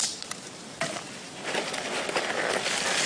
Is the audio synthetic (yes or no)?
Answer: no